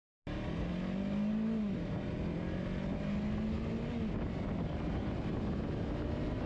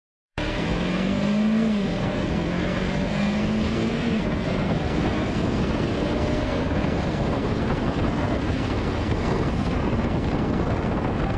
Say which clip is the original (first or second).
first